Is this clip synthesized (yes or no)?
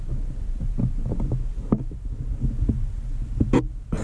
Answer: no